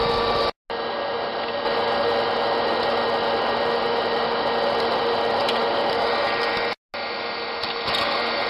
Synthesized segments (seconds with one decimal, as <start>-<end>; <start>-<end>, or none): none